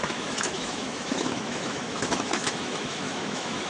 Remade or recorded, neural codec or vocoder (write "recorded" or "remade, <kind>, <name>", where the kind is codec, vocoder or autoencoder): remade, autoencoder, DAC-VAE